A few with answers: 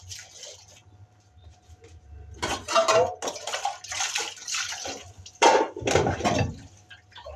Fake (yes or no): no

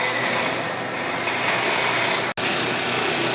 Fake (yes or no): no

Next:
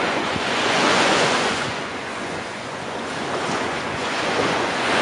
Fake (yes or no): yes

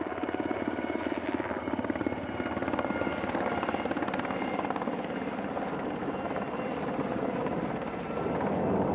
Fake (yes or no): no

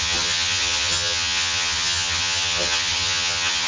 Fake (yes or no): yes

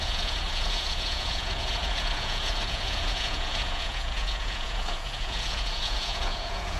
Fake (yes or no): yes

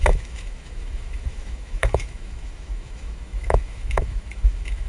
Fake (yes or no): yes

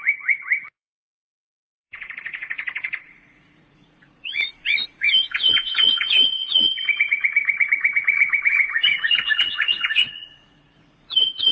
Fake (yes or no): yes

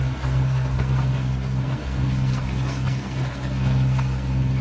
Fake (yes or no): yes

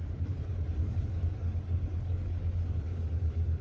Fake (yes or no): yes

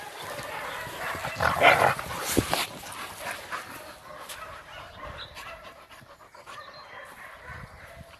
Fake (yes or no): no